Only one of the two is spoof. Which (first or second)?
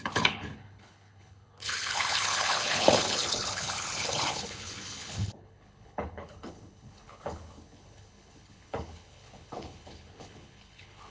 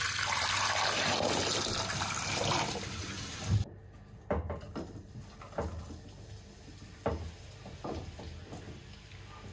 first